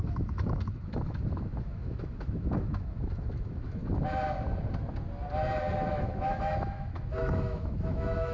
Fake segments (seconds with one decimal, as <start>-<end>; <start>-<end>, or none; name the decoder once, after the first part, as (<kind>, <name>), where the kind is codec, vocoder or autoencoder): 0.0-3.8 (autoencoder, DAC-VAE); 5.9-8.3